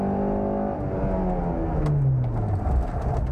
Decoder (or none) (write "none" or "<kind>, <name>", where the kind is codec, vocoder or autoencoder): none